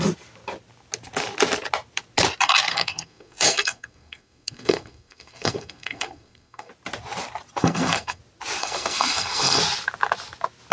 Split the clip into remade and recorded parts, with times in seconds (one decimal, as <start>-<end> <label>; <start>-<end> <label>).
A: 0.0-2.7 recorded; 2.7-6.7 remade; 6.7-7.6 recorded; 7.6-8.2 remade; 8.2-8.6 recorded; 8.6-9.6 remade; 9.6-10.7 recorded